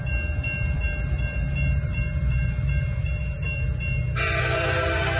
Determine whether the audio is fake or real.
real